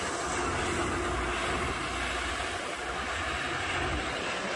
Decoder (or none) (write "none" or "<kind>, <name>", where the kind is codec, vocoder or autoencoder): none